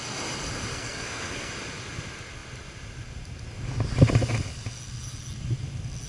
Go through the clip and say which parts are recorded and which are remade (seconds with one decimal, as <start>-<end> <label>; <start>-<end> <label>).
0.0-0.7 recorded; 0.7-1.5 remade; 1.5-6.1 recorded